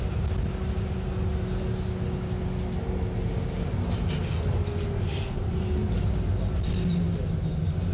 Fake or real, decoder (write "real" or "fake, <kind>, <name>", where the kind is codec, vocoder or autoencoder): real